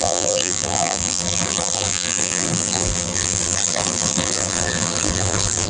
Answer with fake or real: fake